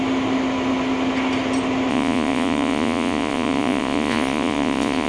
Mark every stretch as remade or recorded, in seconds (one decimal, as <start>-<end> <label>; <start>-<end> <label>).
0.0-1.9 recorded; 1.9-5.1 remade